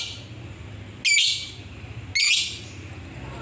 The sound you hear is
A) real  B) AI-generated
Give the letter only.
A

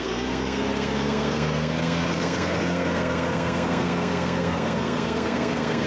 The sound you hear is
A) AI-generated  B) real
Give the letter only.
A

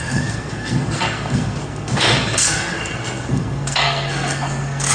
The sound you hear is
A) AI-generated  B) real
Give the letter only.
A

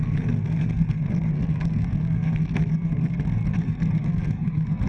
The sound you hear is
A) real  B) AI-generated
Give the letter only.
B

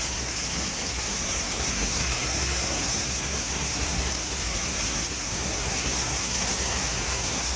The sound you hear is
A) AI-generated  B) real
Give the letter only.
A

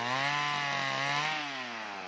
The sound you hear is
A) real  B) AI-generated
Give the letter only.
A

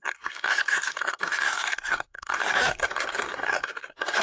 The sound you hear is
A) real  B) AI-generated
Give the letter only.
B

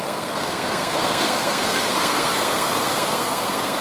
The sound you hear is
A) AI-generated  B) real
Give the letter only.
A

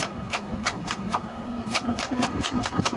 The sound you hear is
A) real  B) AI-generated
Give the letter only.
B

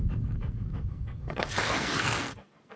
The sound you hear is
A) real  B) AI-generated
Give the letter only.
B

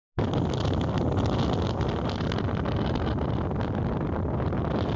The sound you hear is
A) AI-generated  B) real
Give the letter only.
B